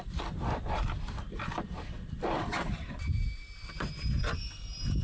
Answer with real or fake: fake